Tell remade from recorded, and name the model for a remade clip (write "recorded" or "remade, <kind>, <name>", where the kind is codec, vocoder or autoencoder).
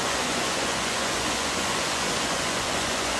remade, vocoder, Vocos